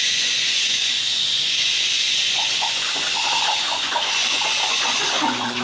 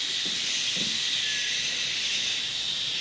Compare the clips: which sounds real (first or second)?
second